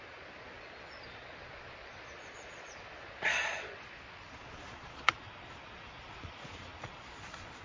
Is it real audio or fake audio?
fake